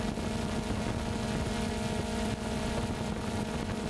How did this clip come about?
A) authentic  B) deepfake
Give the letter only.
A